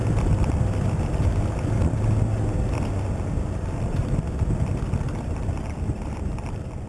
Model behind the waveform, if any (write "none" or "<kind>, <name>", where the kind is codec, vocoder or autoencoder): none